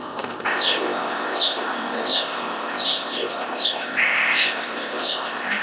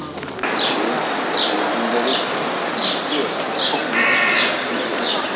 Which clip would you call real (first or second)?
second